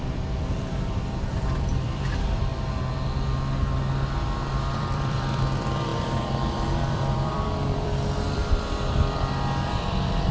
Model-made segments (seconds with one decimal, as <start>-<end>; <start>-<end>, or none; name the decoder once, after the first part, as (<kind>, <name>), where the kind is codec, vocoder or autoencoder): 0.0-2.5 (vocoder, BigVGAN v2); 4.8-10.3